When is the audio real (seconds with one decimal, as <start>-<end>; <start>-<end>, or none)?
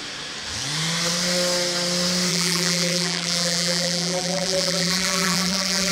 0.0-2.3